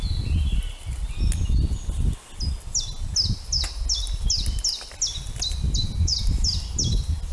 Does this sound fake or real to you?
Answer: real